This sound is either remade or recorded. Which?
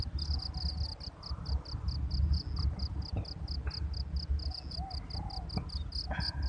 recorded